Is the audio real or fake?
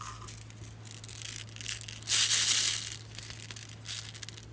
real